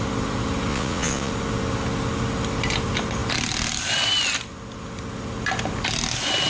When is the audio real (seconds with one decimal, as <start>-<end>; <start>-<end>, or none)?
0.0-0.7; 1.3-6.5